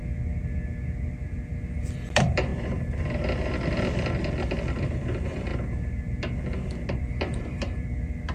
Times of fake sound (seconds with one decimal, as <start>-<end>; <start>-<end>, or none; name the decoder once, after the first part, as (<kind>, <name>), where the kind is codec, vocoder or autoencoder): 1.8-2.5 (vocoder, BigVGAN v2); 4.4-5.5; 7.0-8.3